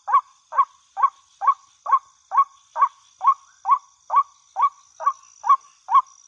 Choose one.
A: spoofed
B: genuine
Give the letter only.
B